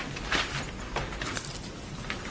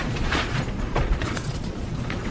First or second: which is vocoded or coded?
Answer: second